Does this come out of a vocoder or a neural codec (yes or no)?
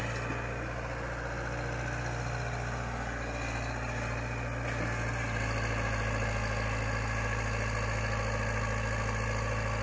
no